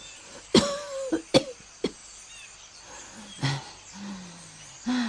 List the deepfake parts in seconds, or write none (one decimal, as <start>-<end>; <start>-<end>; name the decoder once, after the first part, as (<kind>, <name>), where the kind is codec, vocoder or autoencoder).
none